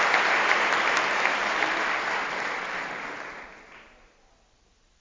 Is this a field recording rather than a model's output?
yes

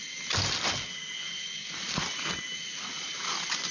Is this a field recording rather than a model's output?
yes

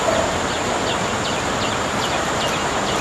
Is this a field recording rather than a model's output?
yes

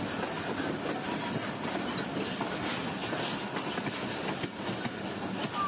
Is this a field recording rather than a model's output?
yes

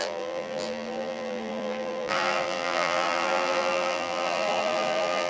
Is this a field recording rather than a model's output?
no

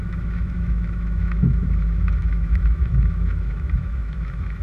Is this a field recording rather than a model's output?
no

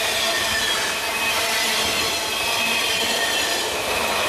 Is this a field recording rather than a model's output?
yes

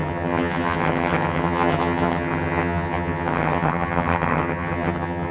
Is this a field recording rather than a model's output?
no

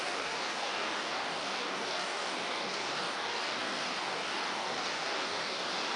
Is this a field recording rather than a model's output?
no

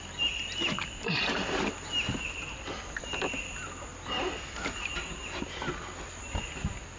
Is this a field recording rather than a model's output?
yes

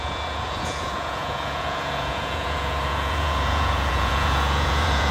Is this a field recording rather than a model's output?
no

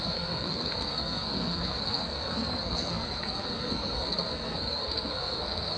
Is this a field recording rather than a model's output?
no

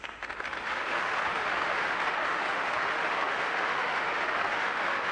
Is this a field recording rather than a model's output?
no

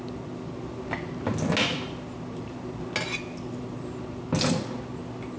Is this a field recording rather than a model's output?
yes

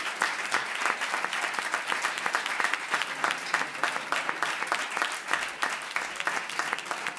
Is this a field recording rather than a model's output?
yes